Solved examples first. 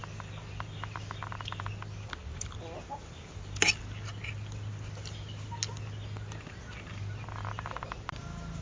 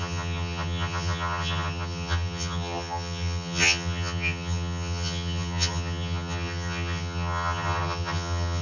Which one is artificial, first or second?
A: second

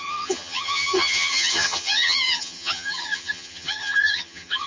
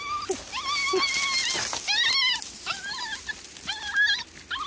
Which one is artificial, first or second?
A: first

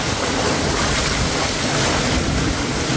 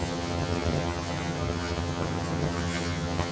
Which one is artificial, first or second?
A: second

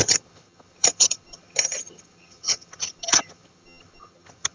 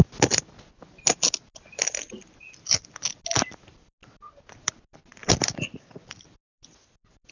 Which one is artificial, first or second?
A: first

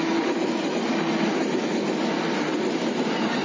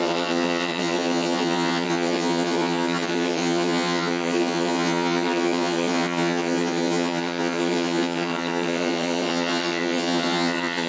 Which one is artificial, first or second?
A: second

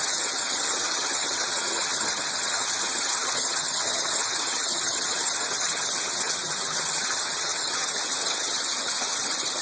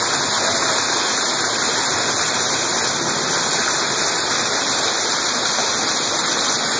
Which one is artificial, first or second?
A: first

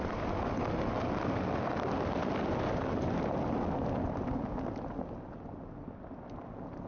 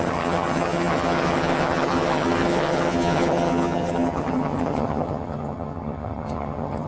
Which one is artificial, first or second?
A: second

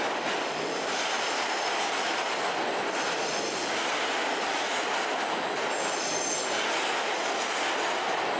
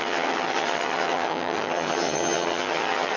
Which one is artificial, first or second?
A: second